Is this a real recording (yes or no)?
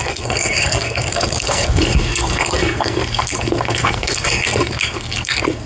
no